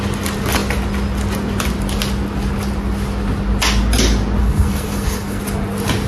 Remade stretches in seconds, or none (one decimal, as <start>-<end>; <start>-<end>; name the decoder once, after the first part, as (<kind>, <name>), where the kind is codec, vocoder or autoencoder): 4.4-5.4 (codec, SNAC)